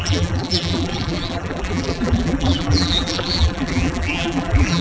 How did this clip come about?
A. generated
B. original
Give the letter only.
A